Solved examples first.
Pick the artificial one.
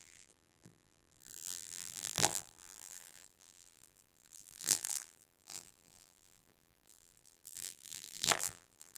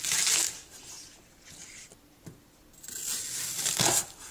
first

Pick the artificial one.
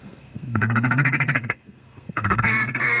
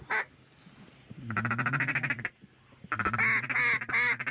first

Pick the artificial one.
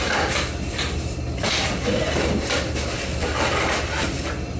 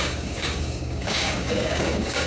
second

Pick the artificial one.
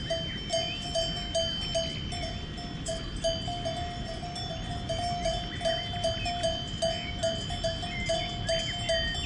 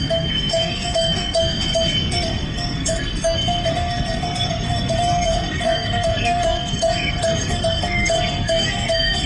second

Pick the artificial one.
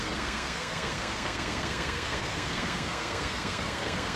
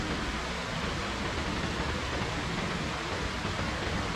first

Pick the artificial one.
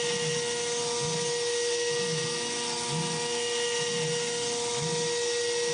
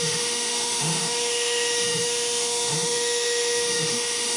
second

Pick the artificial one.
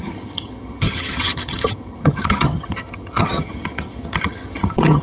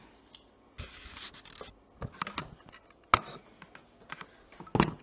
first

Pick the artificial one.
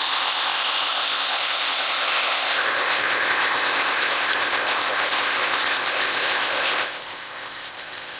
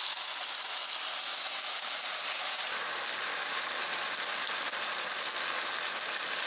first